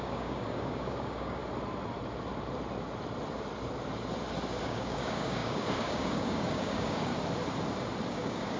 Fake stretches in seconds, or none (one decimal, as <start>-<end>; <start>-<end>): 0.0-1.4; 4.6-7.1; 8.1-8.6